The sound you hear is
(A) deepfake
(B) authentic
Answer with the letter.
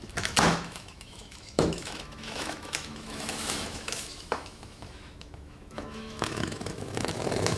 A